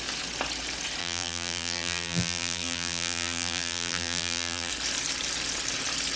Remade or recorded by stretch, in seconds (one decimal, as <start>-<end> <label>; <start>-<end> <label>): 0.0-1.0 recorded; 1.0-4.7 remade; 4.7-6.2 recorded